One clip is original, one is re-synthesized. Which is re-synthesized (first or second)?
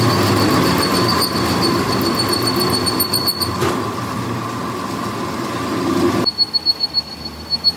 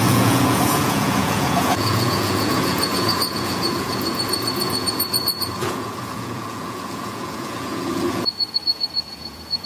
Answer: second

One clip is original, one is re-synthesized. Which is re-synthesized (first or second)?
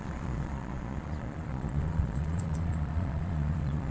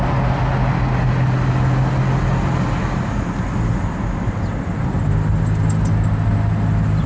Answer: first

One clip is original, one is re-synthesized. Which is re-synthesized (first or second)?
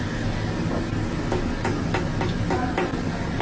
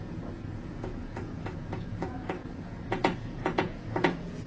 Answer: second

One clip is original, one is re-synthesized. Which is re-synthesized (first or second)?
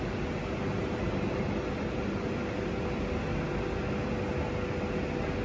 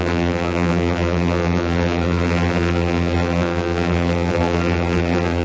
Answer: second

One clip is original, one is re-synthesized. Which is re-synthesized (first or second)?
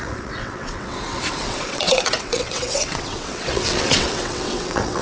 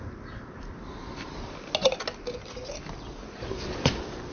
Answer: first